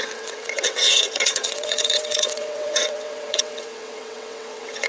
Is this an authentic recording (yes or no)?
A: no